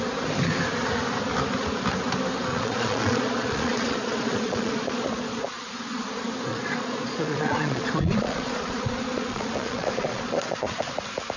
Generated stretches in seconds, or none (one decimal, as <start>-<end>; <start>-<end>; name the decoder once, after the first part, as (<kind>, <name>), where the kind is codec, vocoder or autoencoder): 2.5-6.0 (vocoder, Vocos); 6.5-10.9